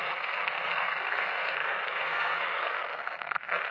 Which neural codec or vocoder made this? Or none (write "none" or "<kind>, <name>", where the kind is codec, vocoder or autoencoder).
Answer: codec, SNAC